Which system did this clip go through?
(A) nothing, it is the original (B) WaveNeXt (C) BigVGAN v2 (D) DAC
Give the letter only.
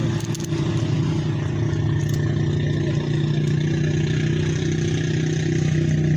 A